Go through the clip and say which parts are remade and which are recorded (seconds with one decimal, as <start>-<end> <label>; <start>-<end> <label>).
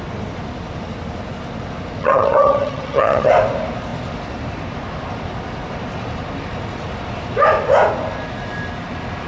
0.0-2.0 recorded; 2.0-3.3 remade; 3.3-9.3 recorded